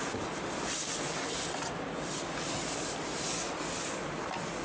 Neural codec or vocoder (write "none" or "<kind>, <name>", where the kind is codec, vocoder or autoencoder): none